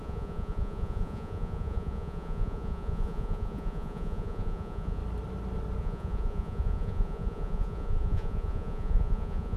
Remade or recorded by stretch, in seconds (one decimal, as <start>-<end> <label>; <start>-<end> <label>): 0.0-5.0 remade; 5.0-5.8 recorded; 5.8-9.6 remade